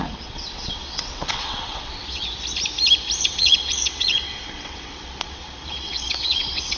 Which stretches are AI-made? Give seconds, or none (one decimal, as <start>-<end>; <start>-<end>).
0.0-2.2; 3.2-6.8